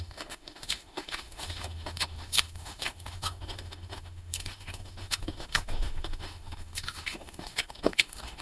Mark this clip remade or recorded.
remade